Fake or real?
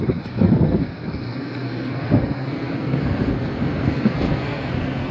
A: fake